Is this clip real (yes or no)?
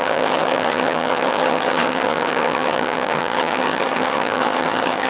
no